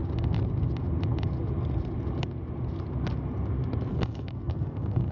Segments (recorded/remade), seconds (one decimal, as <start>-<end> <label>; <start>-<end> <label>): 0.0-3.9 recorded; 3.9-5.1 remade